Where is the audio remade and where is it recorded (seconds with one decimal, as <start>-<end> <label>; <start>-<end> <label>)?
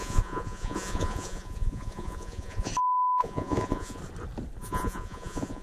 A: 0.0-2.7 remade; 2.7-3.2 recorded; 3.2-4.0 remade; 4.0-4.6 recorded; 4.6-5.6 remade